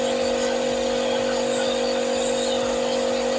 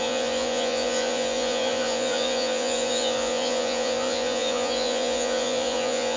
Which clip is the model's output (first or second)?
second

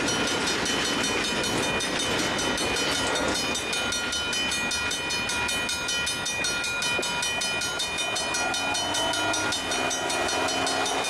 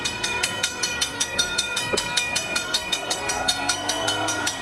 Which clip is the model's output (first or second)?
second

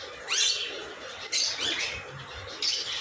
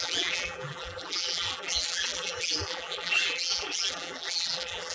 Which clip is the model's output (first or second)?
second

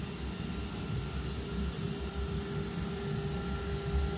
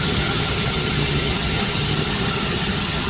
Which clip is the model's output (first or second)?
second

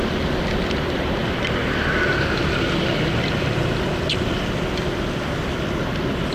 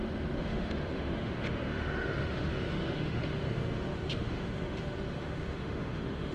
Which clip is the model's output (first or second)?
second